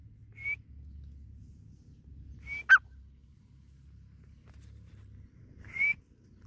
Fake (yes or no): no